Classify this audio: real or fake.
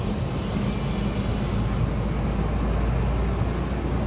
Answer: real